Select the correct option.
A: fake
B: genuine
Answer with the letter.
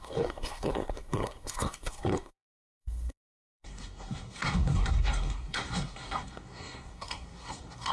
A